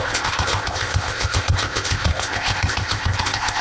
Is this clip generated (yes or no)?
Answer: yes